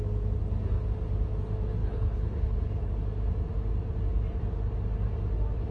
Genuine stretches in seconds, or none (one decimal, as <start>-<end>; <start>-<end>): 0.0-1.8; 2.9-5.7

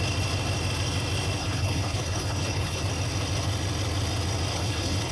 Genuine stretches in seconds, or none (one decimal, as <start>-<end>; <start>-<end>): 0.0-1.4; 2.8-4.5

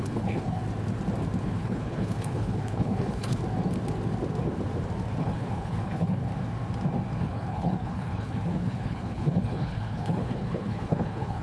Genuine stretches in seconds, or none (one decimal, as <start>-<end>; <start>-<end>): 0.6-1.4; 3.4-5.2; 6.3-7.2

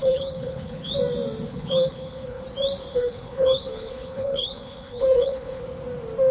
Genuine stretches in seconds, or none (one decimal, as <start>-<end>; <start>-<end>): 0.9-1.5; 2.4-2.9; 5.6-6.3

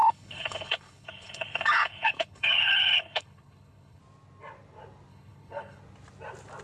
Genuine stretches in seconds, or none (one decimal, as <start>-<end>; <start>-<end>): 4.0-5.1; 5.8-6.6